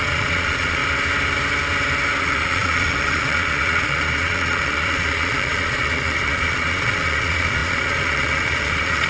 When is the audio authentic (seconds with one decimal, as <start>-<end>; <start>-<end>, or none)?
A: 0.8-2.2